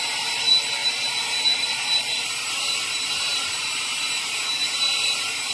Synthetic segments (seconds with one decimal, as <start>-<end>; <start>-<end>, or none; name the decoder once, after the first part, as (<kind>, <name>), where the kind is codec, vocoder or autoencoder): 0.0-5.5 (vocoder, BigVGAN v2)